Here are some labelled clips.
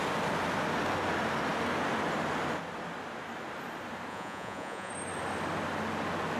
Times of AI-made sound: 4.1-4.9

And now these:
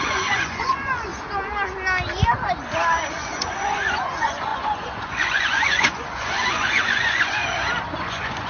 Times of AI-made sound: 0.0-1.1; 3.1-7.4; 8.0-8.5

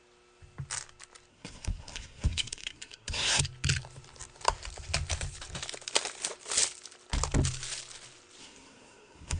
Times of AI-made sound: 1.3-3.4; 8.4-9.4

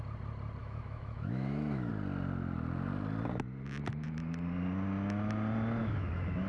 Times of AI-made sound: 0.6-1.9; 5.8-6.5